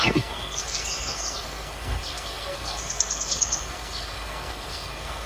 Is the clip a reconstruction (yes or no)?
yes